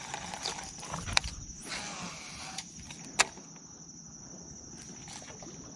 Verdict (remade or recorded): recorded